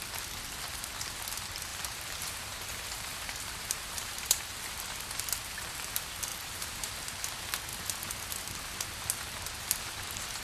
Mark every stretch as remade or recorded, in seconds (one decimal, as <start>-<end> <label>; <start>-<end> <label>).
0.0-1.7 recorded; 1.7-4.5 remade; 4.5-6.3 recorded; 6.3-6.9 remade; 6.9-10.4 recorded